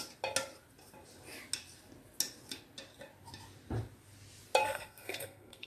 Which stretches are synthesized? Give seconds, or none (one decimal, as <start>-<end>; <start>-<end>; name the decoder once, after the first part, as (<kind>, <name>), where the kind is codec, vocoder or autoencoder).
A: 4.6-5.7 (codec, SNAC)